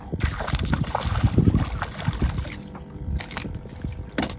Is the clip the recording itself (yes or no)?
yes